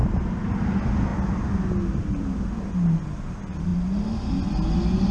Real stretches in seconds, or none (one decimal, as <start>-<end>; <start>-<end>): 0.0-5.1